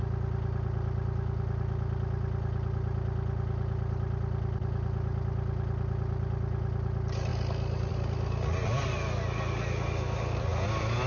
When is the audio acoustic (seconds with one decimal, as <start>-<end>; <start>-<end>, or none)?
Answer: 0.0-11.1